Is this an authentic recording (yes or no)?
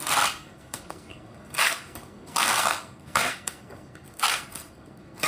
no